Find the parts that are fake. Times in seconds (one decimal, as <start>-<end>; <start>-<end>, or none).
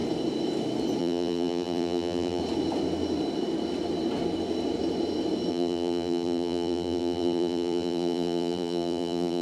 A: 1.0-2.4; 5.5-9.4